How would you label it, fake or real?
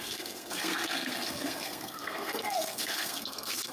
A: fake